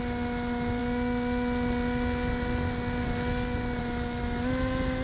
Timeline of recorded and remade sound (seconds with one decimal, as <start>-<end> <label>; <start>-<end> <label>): 0.0-5.0 recorded